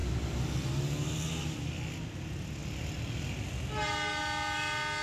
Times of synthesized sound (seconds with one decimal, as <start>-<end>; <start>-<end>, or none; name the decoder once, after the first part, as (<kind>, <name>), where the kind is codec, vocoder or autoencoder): none

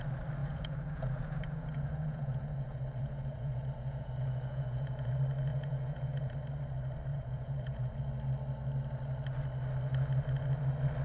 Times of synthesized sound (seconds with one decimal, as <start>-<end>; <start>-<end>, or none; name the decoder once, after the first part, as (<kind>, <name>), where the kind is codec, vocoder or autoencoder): 0.4-5.1 (vocoder, Vocos); 5.5-6.3; 7.1-8.1

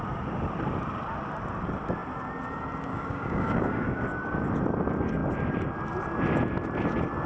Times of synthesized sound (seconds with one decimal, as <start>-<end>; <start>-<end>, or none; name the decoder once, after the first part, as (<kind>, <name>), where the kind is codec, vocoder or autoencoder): 2.9-4.0 (codec, DAC)

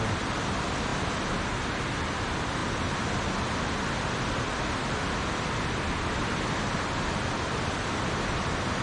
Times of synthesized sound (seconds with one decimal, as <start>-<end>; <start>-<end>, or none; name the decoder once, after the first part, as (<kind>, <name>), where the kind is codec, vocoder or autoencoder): none

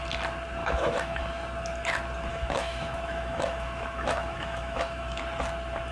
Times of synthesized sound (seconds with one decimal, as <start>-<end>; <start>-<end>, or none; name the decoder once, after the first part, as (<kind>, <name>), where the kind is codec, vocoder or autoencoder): 0.6-1.2 (autoencoder, DAC-VAE); 2.3-5.2

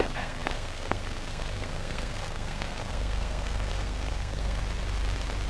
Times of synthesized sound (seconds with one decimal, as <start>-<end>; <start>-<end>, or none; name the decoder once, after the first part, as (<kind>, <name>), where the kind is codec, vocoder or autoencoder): 0.0-4.6 (codec, SNAC)